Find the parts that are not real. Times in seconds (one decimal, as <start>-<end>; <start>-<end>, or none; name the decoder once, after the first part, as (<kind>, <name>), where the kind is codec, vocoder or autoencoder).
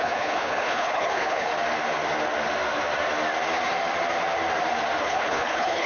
0.0-1.5 (codec, HILCodec); 5.0-5.9